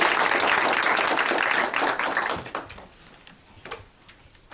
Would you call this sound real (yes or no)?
yes